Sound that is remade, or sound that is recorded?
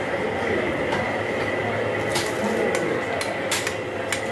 recorded